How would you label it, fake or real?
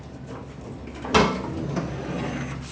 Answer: real